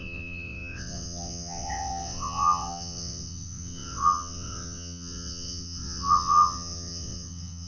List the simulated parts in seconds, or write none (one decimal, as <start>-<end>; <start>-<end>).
0.0-7.7